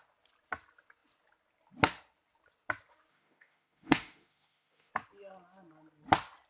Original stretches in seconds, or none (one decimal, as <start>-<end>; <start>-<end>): 0.0-3.1; 4.9-6.5